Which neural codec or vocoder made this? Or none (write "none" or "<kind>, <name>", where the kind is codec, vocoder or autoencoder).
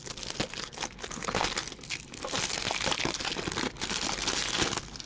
none